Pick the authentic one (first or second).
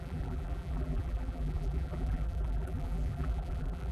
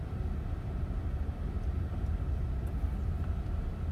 second